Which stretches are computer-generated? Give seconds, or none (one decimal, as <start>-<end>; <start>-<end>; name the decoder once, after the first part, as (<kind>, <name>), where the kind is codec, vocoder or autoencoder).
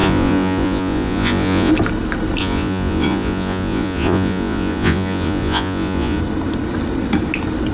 0.0-1.7 (vocoder, Vocos); 2.4-6.2